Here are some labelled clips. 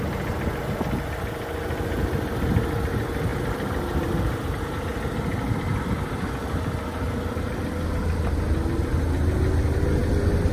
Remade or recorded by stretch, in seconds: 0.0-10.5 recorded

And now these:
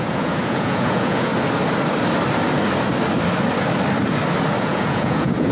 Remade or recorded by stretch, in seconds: 0.0-1.3 remade; 1.3-4.6 recorded; 4.6-5.5 remade

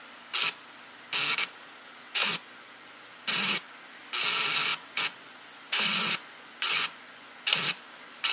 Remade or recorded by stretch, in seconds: 0.0-2.2 recorded; 2.2-3.1 remade; 3.1-4.7 recorded; 4.7-7.4 remade; 7.4-8.3 recorded